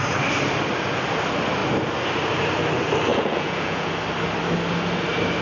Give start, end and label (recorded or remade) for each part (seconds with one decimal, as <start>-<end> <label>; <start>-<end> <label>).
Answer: 0.0-3.1 recorded; 3.1-3.9 remade; 3.9-5.4 recorded